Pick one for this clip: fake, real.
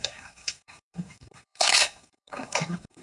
fake